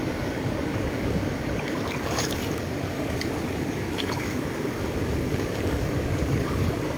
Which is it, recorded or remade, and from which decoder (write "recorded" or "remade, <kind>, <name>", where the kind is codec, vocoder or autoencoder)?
remade, codec, DAC